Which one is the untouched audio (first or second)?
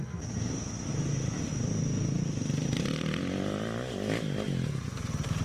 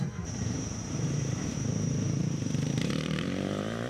first